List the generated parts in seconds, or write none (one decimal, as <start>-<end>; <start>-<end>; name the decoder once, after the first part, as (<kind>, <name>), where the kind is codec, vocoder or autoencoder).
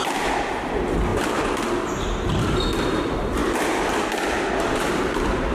3.4-4.9 (vocoder, BigVGAN v2)